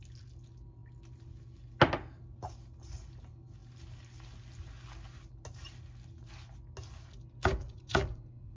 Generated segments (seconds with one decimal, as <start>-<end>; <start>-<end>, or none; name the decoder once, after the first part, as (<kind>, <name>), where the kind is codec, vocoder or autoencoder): 7.6-8.6 (vocoder, Vocos)